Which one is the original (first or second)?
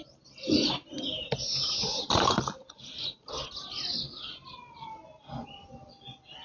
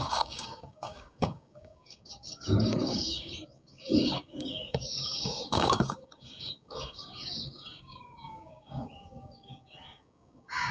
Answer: first